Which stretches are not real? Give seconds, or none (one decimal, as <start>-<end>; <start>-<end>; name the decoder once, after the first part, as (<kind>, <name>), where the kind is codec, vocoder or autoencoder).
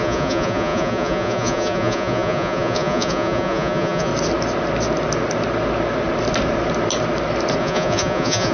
0.0-4.1 (vocoder, Vocos); 7.6-8.5